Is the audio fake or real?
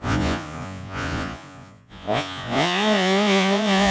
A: fake